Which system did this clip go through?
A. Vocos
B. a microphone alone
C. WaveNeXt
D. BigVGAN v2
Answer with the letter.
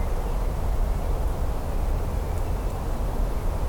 B